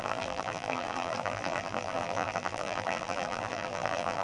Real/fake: fake